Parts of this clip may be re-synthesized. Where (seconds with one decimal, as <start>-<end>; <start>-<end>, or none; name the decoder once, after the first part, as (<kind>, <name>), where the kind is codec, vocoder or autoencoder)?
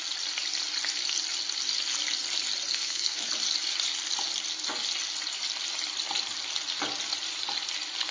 2.7-3.3 (codec, SNAC)